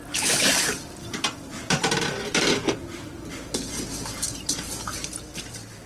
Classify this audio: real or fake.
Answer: fake